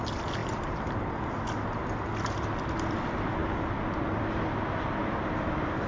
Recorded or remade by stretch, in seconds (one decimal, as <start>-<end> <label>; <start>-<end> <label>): 0.0-0.4 recorded; 0.4-1.1 remade; 1.1-5.0 recorded; 5.0-5.9 remade